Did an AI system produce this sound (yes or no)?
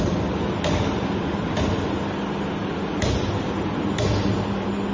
no